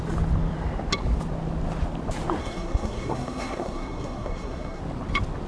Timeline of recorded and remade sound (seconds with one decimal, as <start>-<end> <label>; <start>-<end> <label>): 0.0-2.4 recorded; 2.4-4.8 remade; 4.8-5.5 recorded